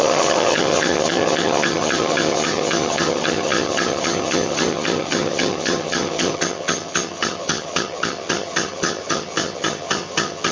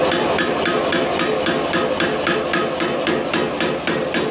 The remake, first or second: first